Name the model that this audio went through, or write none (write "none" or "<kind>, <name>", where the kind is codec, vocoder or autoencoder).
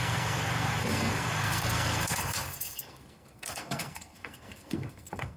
codec, SNAC